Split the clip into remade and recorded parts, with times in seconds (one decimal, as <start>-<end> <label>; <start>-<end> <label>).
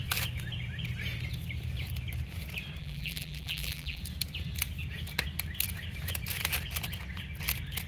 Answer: 0.0-2.8 recorded; 2.8-4.0 remade; 4.0-7.9 recorded